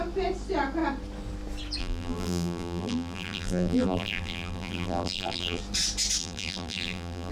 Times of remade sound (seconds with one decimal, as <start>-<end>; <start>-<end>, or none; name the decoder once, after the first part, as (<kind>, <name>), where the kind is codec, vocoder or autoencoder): 1.8-5.6 (vocoder, BigVGAN v2); 6.2-7.3